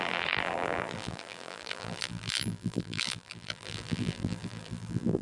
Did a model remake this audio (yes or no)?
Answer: yes